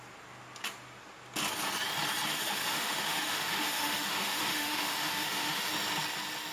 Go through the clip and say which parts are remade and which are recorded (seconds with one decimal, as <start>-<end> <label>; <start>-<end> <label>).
0.0-2.3 recorded; 2.3-5.7 remade; 5.7-6.5 recorded